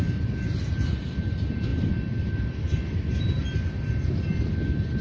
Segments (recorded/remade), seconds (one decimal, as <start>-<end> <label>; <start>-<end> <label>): 0.0-5.0 recorded